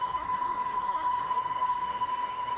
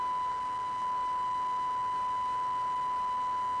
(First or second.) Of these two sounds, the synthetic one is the first